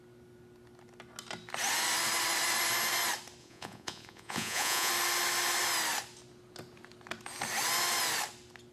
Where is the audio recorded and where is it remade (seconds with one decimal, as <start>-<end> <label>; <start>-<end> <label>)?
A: 0.0-3.4 recorded; 3.4-4.9 remade; 4.9-8.7 recorded